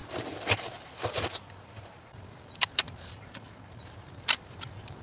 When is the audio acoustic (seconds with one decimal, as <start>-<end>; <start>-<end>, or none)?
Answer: none